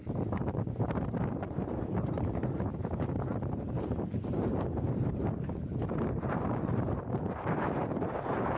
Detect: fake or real fake